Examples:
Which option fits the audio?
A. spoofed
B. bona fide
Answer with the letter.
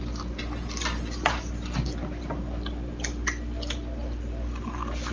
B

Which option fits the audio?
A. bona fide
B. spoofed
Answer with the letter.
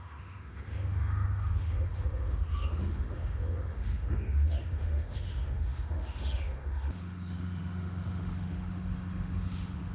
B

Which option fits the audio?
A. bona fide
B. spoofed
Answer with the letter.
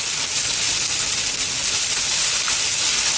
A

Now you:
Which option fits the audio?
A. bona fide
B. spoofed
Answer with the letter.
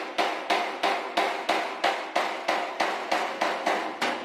A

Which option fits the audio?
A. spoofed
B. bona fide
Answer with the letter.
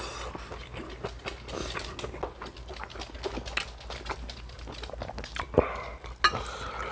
B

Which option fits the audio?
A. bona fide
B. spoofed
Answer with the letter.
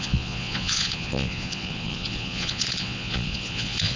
B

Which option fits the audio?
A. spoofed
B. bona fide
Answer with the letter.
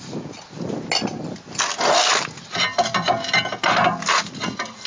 B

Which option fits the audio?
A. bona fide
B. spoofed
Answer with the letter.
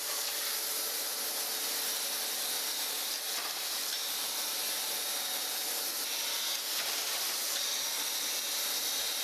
A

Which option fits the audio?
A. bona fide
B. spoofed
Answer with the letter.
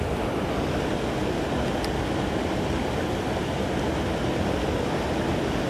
A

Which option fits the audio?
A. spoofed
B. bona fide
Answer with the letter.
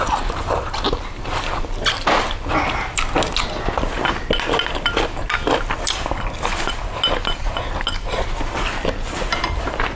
B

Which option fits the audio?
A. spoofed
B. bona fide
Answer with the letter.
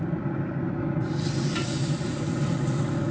B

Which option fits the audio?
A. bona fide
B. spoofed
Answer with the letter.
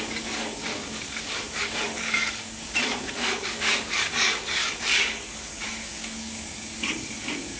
B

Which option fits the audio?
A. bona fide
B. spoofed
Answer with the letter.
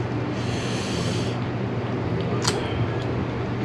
A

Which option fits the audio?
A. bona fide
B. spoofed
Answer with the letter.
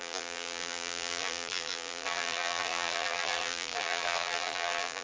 B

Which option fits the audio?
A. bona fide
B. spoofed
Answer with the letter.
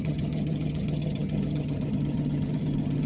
B